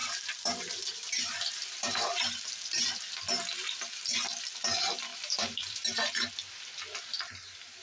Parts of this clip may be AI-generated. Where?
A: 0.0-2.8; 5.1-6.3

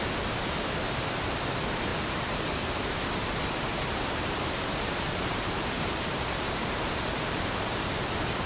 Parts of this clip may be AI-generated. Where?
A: 1.9-3.0; 3.7-7.0

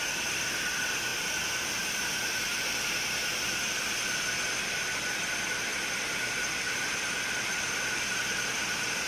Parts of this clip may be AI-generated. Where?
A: 0.0-9.1

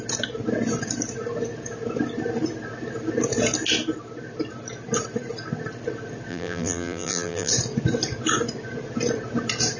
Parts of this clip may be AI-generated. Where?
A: 6.3-7.5

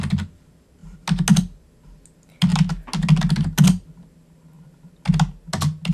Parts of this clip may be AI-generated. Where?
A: none

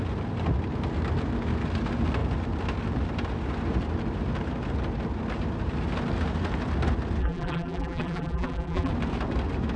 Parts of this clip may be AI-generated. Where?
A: 7.2-8.9